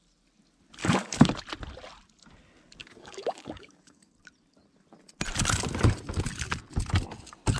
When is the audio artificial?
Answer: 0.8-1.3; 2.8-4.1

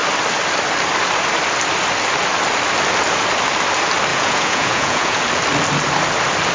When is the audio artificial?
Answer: 4.1-5.2

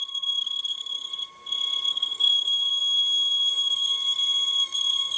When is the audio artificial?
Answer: 0.0-1.1; 1.9-4.0; 4.6-5.2

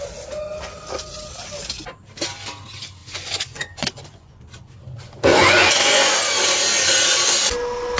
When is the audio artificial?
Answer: 3.0-4.4; 5.3-6.1

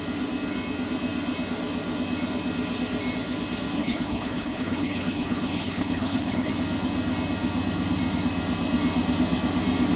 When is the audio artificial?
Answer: 3.8-6.5

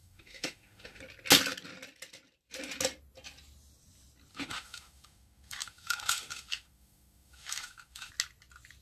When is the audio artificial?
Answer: 0.0-1.0; 4.3-8.1

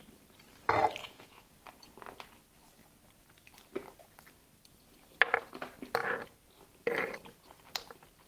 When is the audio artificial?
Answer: 1.0-1.5